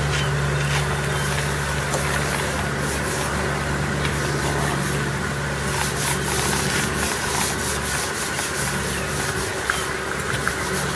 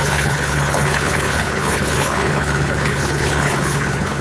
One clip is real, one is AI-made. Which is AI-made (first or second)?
second